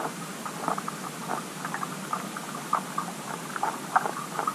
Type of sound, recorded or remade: recorded